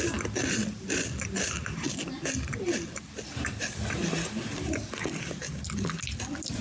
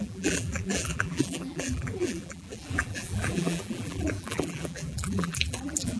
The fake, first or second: second